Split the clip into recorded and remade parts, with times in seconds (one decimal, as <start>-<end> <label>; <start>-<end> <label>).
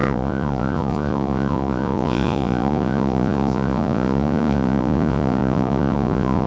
0.0-6.5 remade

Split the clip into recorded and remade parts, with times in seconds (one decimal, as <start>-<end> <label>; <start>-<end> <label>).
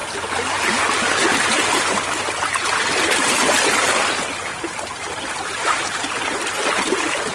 0.0-2.3 remade; 2.3-4.5 recorded; 4.5-7.3 remade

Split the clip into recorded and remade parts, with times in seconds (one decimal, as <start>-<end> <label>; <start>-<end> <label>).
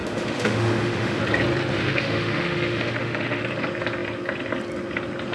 0.0-1.2 remade; 1.2-1.7 recorded; 1.7-3.4 remade; 3.4-5.3 recorded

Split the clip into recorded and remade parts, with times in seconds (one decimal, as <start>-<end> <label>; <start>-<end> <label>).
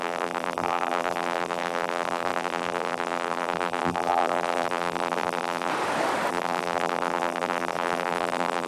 0.0-5.7 remade; 5.7-6.3 recorded; 6.3-8.7 remade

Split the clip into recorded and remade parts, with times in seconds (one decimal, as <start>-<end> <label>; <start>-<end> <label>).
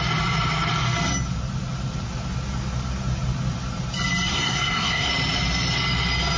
0.0-4.3 recorded; 4.3-5.1 remade; 5.1-6.4 recorded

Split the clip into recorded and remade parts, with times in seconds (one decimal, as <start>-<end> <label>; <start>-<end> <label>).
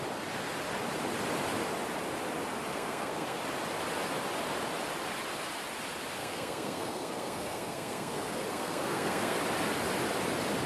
0.0-2.7 recorded; 2.7-3.4 remade; 3.4-6.2 recorded; 6.2-9.4 remade; 9.4-10.7 recorded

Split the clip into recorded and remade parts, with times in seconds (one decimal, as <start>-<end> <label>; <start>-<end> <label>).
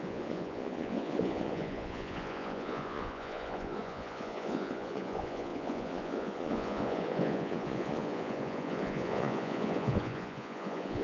0.0-11.0 remade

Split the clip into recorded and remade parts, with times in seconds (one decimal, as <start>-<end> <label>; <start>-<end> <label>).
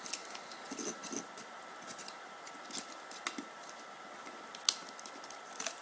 0.0-5.8 recorded